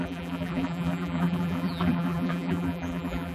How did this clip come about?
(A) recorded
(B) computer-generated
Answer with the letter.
B